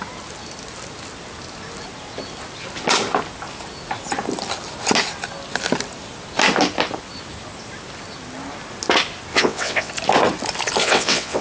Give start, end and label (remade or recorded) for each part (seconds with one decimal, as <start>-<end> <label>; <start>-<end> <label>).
0.0-9.3 recorded; 9.3-9.9 remade; 9.9-10.8 recorded; 10.8-11.4 remade